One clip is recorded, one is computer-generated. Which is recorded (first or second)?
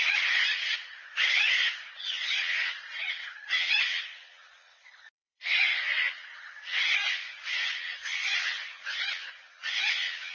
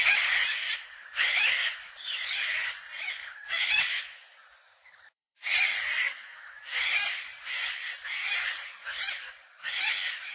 second